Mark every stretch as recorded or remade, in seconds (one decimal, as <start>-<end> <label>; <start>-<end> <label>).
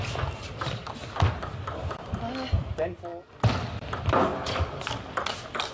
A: 0.0-5.7 recorded